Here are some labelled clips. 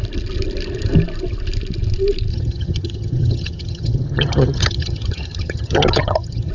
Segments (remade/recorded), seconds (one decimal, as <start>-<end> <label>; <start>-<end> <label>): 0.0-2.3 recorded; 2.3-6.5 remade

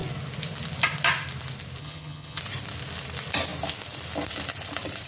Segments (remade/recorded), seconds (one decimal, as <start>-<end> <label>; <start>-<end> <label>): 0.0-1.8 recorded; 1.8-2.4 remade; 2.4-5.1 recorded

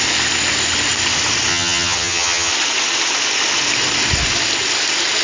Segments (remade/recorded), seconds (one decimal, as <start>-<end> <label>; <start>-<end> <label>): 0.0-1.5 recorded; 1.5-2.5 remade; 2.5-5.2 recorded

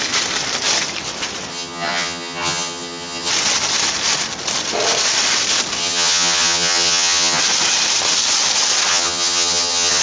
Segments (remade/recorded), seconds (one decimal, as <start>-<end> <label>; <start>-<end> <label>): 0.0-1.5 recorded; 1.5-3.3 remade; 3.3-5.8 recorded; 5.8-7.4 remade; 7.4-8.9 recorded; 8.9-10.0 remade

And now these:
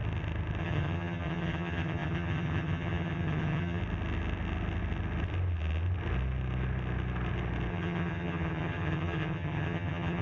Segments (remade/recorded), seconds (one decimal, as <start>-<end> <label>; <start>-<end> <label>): 0.0-0.6 recorded; 0.6-3.8 remade; 3.8-7.7 recorded; 7.7-10.2 remade

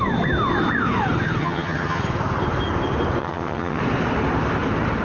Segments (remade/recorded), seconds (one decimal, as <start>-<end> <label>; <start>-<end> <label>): 0.0-1.4 recorded; 1.4-2.0 remade; 2.0-3.2 recorded; 3.2-3.8 remade; 3.8-5.0 recorded

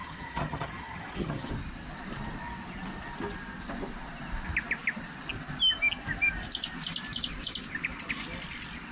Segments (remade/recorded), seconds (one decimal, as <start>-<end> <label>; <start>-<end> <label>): 0.0-1.5 remade; 1.5-8.9 recorded